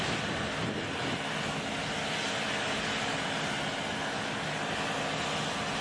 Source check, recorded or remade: recorded